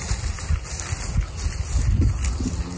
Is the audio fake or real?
real